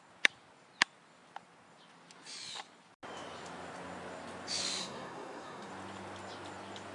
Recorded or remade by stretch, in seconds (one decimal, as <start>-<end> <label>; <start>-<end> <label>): 0.0-4.8 recorded; 4.8-5.7 remade; 5.7-6.9 recorded